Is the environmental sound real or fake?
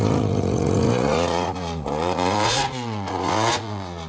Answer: fake